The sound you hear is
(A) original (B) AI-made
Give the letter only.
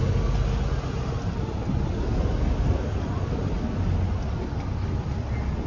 A